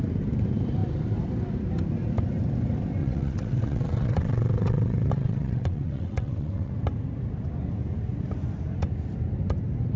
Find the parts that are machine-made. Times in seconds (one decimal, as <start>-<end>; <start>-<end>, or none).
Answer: 3.0-6.7